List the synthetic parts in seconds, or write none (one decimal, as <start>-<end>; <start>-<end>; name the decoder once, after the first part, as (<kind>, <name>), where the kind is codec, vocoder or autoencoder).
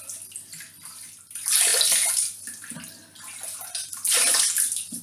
none